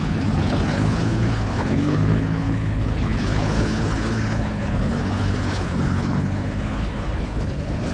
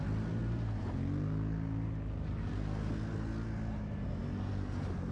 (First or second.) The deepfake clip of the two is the first